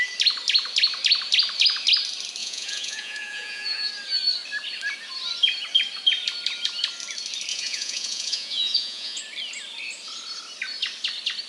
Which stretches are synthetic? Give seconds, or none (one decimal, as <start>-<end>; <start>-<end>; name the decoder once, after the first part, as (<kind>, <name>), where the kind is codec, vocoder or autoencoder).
2.4-3.9 (vocoder, Vocos); 7.5-9.2